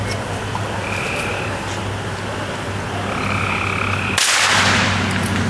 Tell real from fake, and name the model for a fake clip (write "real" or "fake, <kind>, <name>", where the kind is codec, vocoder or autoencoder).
real